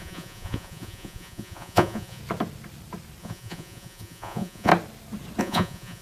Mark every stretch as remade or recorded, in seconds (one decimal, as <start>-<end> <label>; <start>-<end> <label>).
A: 0.0-2.2 remade; 2.2-3.2 recorded; 3.2-4.7 remade; 4.7-5.4 recorded; 5.4-6.0 remade